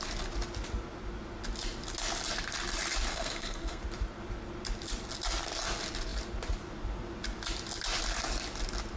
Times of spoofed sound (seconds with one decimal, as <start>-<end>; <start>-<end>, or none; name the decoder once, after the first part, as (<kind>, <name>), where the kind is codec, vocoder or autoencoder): 3.1-3.8 (codec, SNAC)